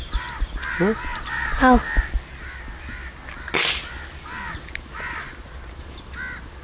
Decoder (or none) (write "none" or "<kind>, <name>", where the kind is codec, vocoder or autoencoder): none